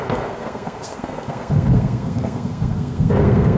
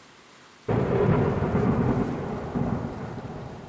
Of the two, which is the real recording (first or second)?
second